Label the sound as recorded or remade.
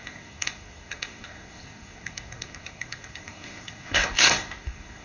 remade